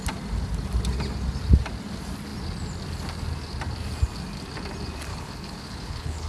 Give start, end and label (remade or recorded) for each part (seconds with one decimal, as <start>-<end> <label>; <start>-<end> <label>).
0.0-5.1 recorded; 5.1-6.3 remade